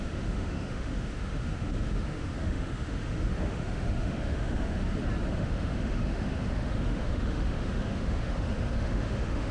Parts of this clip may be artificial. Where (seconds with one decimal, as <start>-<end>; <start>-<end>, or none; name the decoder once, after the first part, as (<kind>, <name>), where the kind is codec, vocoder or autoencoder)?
0.0-4.8 (autoencoder, DAC-VAE); 5.3-9.5